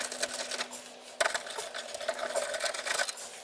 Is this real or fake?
real